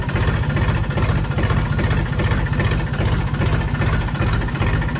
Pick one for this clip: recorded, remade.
recorded